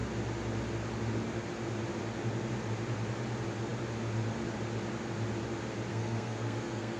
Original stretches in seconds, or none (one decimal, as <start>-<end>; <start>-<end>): 0.0-5.9